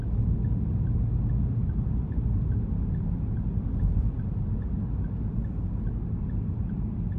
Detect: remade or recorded recorded